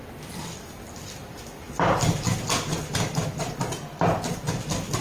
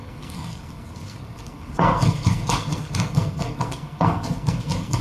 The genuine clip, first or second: first